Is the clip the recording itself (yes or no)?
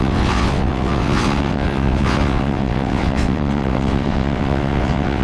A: no